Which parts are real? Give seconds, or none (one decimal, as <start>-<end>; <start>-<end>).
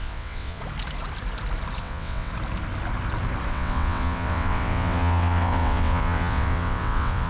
0.6-1.8; 2.3-3.5